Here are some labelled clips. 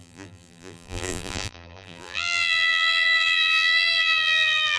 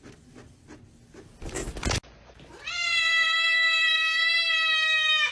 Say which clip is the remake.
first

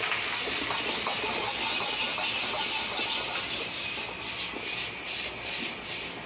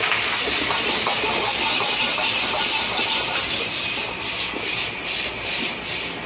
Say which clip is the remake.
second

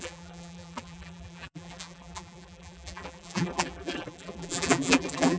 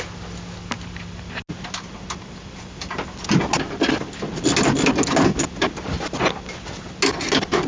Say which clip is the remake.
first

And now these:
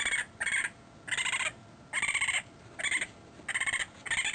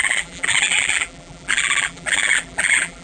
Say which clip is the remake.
second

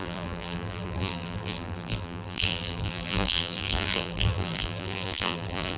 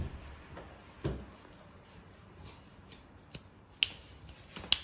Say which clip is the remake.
first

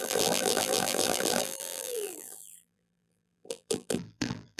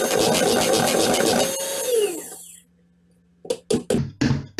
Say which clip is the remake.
first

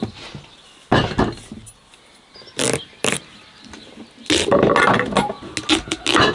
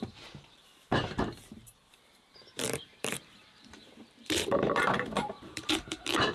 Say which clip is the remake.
second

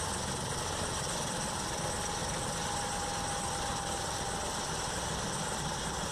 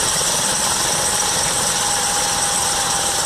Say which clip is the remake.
second